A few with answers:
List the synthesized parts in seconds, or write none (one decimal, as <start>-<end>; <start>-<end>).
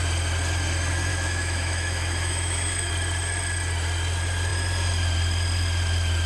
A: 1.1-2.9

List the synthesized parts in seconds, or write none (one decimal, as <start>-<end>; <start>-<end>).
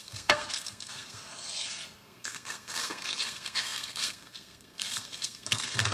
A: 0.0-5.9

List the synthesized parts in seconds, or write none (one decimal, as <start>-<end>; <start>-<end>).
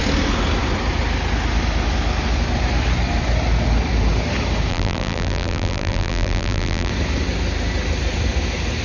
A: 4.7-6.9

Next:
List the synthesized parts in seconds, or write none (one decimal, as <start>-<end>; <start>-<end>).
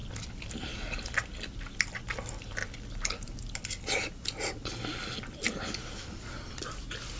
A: none